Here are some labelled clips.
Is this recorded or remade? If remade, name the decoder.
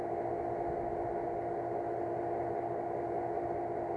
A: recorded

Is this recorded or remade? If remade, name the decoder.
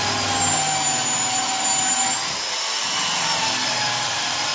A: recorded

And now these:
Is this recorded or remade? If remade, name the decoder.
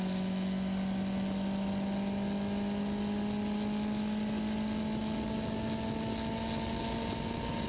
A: recorded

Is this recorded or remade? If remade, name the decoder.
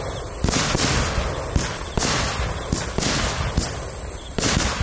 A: recorded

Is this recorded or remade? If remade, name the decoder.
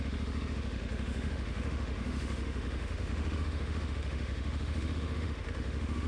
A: remade, autoencoder, DAC-VAE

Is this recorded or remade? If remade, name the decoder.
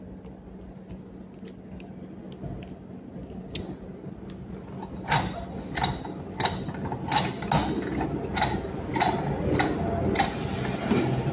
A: recorded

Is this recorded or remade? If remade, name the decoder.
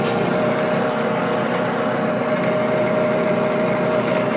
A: recorded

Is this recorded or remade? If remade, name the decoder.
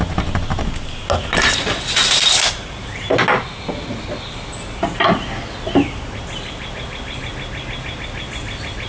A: recorded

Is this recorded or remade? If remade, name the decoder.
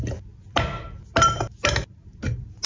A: recorded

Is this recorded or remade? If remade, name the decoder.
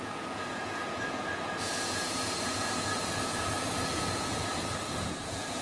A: remade, vocoder, Vocos